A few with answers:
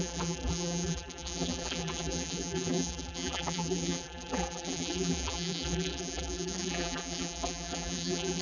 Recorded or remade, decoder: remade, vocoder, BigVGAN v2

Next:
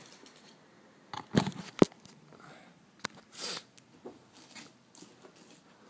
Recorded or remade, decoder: recorded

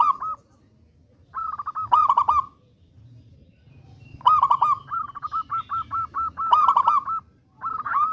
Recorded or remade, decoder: recorded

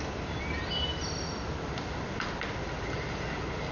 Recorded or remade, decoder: recorded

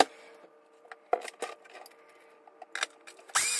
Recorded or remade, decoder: recorded